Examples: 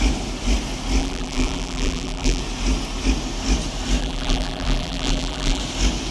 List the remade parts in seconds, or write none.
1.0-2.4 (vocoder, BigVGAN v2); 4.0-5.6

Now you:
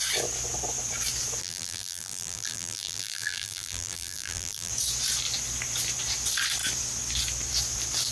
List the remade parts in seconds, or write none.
1.4-4.7 (vocoder, BigVGAN v2)